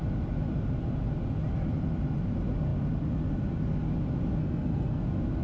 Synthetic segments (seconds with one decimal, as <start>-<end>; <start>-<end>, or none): 4.4-5.0

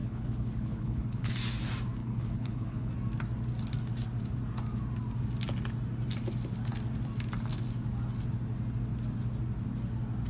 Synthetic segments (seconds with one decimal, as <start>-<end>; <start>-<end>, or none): 0.0-1.3; 2.0-2.9

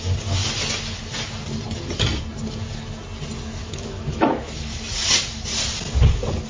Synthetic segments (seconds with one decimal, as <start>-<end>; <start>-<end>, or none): 3.6-4.5

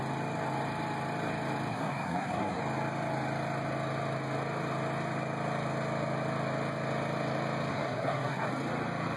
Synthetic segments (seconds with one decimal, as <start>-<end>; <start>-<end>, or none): 1.7-2.6; 7.7-8.5